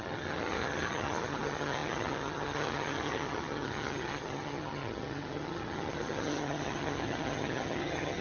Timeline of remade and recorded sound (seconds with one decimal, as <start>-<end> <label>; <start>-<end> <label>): 0.0-8.2 remade